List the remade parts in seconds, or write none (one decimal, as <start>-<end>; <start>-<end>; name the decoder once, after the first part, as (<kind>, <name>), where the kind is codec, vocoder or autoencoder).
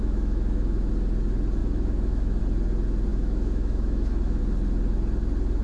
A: 0.0-0.9 (autoencoder, DAC-VAE); 1.6-2.4; 3.1-4.4